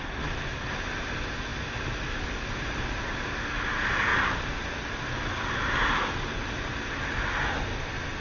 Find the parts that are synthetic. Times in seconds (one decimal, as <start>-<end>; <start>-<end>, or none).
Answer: none